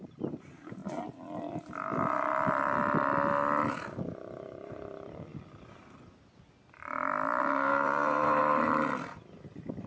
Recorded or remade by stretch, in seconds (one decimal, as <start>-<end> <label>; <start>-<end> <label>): 0.0-0.8 remade; 0.8-4.7 recorded; 4.7-5.3 remade; 5.3-7.4 recorded; 7.4-8.4 remade; 8.4-9.4 recorded; 9.4-9.9 remade